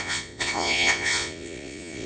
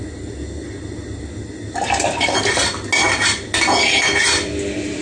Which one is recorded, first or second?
second